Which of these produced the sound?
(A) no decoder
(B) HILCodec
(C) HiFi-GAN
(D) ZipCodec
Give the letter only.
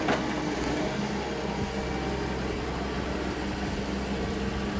A